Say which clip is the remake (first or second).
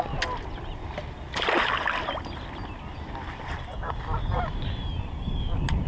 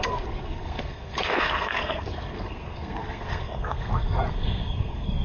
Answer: second